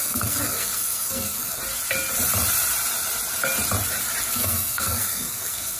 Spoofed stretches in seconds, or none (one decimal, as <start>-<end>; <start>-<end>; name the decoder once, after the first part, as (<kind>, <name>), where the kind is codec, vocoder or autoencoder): 0.0-1.6 (codec, SNAC); 4.3-5.8